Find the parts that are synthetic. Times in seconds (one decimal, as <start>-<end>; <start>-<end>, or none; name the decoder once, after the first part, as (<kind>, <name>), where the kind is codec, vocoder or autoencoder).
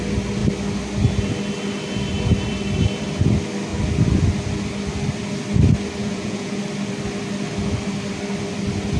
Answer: 6.0-6.6 (vocoder, Vocos)